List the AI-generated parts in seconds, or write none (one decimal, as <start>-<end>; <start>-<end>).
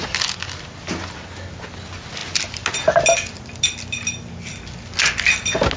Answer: none